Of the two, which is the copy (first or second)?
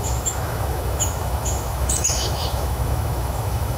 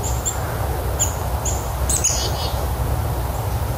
first